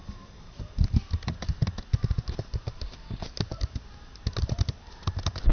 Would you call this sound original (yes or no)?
yes